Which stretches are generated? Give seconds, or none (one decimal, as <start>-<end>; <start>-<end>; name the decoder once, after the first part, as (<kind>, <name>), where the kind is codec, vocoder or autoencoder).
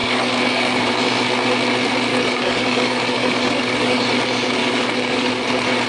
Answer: 0.0-0.9 (codec, DAC); 2.1-4.0; 4.6-5.3